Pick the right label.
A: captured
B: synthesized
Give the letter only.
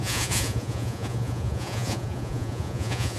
B